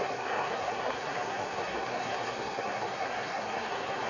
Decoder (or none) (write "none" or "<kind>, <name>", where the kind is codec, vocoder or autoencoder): codec, SNAC